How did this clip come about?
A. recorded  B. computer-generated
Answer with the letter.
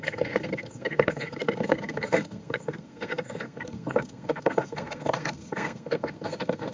B